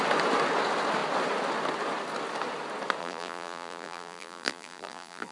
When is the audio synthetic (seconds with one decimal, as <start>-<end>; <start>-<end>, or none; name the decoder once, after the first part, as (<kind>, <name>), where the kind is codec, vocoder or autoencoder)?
3.0-5.3 (vocoder, BigVGAN v2)